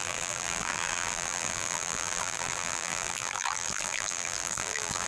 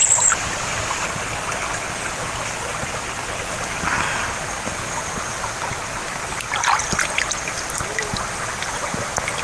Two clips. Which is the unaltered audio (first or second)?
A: second